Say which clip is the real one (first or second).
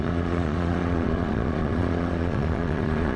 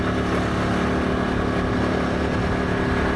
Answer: second